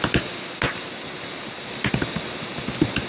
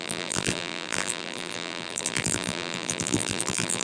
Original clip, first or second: first